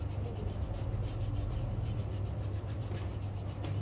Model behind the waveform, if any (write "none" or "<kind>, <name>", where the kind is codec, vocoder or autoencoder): none